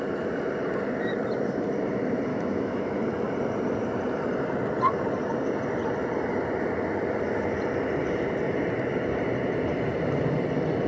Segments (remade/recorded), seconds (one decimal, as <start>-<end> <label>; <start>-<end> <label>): 0.0-2.3 recorded; 2.3-2.9 remade; 2.9-10.9 recorded